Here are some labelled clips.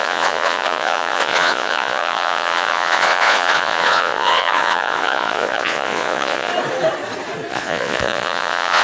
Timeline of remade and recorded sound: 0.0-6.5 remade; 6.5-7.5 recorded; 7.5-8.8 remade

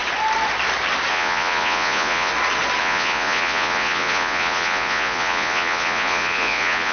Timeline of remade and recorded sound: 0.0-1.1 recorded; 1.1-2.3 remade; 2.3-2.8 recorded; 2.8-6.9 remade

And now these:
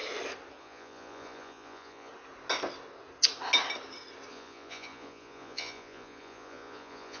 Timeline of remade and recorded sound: 0.0-0.6 recorded; 0.6-2.1 remade; 2.1-4.3 recorded; 4.3-7.2 remade